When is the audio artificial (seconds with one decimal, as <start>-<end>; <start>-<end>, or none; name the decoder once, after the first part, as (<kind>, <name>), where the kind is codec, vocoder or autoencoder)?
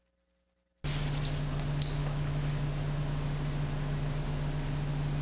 2.0-2.5 (autoencoder, DAC-VAE)